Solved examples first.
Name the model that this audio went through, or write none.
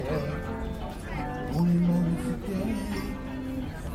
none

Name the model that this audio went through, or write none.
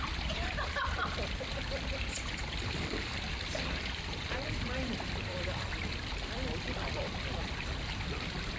vocoder, BigVGAN v2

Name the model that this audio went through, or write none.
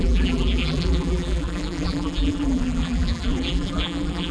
vocoder, BigVGAN v2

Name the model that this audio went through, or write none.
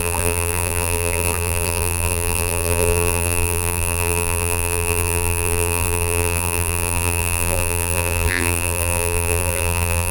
vocoder, BigVGAN v2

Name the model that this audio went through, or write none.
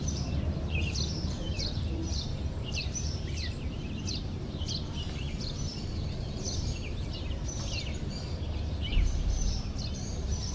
vocoder, BigVGAN v2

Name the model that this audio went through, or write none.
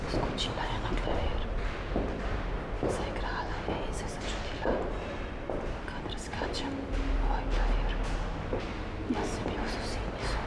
none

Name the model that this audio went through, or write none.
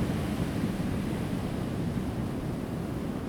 none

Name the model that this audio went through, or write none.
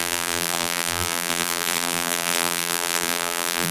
vocoder, BigVGAN v2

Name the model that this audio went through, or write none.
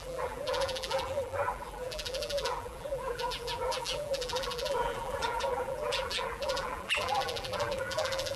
vocoder, BigVGAN v2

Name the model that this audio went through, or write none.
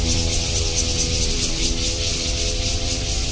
vocoder, BigVGAN v2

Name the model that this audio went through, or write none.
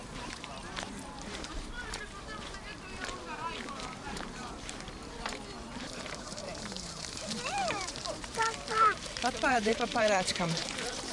vocoder, BigVGAN v2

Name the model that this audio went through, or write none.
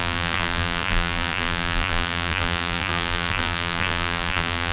vocoder, BigVGAN v2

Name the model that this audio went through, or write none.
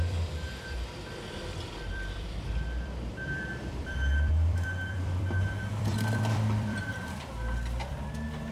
vocoder, BigVGAN v2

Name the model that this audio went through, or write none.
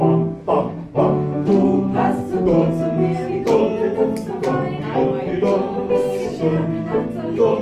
none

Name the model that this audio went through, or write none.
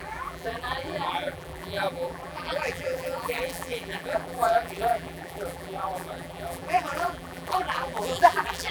vocoder, BigVGAN v2